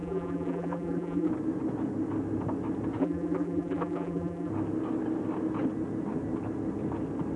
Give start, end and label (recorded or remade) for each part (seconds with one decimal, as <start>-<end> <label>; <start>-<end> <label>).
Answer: 0.0-1.3 remade; 1.3-3.0 recorded; 3.0-4.5 remade; 4.5-7.4 recorded